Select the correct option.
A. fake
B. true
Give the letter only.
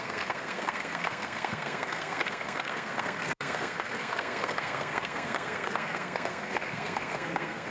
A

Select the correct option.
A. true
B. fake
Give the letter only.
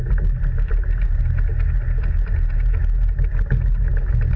A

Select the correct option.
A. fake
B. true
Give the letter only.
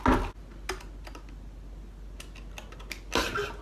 B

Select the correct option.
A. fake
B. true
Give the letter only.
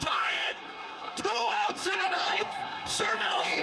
A